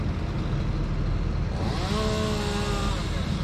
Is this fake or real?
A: real